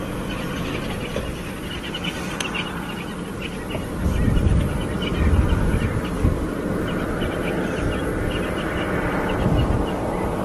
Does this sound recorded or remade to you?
remade